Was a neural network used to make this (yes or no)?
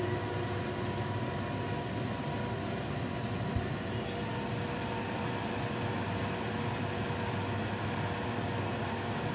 no